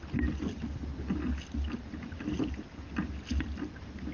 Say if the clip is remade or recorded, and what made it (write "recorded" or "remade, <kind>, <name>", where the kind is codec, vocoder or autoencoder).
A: recorded